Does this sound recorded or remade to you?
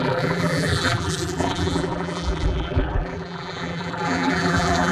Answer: remade